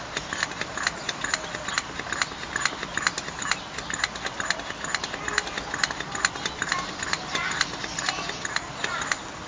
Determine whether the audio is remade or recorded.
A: recorded